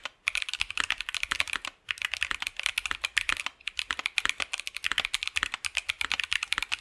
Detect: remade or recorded recorded